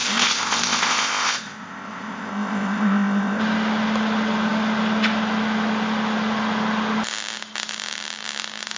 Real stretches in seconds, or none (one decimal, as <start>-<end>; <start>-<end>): 3.4-8.8